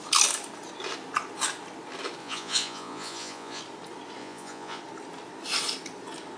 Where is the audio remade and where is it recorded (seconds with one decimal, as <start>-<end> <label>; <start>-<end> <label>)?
0.0-2.2 recorded; 2.2-3.6 remade; 3.6-4.2 recorded; 4.2-4.8 remade; 4.8-6.4 recorded